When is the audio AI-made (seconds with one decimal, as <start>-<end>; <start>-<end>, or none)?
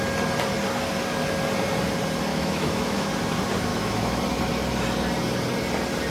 2.3-3.1; 3.7-4.2